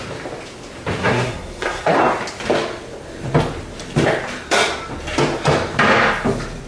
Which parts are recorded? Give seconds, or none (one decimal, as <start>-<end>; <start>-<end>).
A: 0.0-1.0; 2.0-6.7